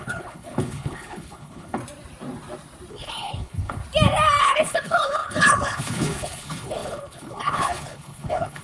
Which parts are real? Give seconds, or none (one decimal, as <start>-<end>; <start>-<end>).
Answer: 1.8-2.9; 3.8-4.4